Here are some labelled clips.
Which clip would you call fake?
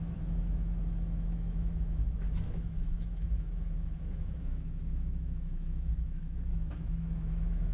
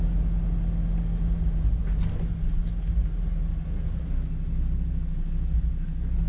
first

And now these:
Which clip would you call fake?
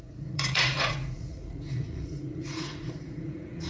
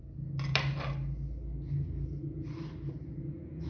first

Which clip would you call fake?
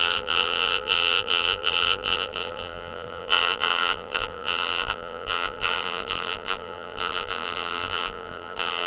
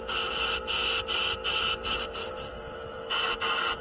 first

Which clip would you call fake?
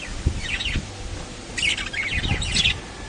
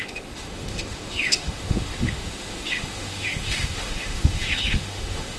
second